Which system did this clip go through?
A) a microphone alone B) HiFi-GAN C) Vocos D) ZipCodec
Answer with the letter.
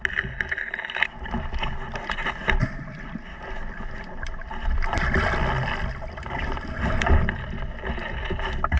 A